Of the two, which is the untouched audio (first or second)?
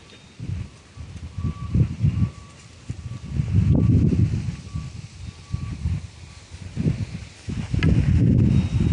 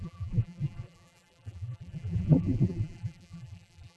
first